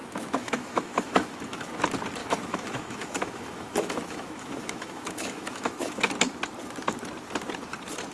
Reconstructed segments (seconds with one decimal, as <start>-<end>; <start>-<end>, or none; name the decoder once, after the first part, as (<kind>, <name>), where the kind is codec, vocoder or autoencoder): 0.0-1.7 (autoencoder, DAC-VAE); 2.2-6.1